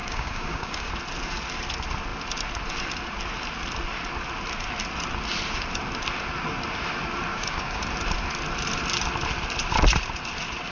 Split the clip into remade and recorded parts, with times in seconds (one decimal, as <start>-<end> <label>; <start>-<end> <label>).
0.0-0.9 remade; 0.9-7.3 recorded; 7.3-7.8 remade; 7.8-10.7 recorded